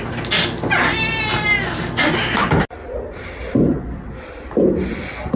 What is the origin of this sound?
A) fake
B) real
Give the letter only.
B